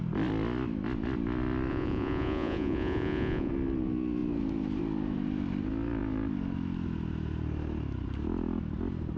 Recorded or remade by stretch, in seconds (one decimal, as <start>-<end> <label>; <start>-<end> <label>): 0.0-1.7 recorded; 1.7-3.5 remade; 3.5-9.2 recorded